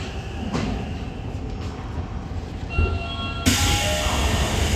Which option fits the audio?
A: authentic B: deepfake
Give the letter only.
A